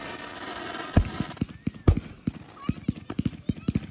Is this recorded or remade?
recorded